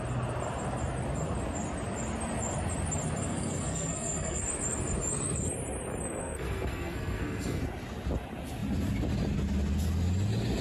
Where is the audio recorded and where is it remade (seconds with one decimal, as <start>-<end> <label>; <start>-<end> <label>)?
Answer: 0.0-3.3 recorded; 3.3-4.4 remade; 4.4-6.2 recorded; 6.2-7.6 remade; 7.6-10.6 recorded